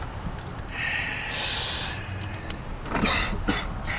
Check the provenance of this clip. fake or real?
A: real